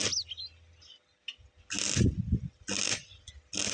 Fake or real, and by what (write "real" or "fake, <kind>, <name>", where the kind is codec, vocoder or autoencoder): real